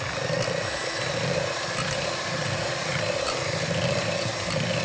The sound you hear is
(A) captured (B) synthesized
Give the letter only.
A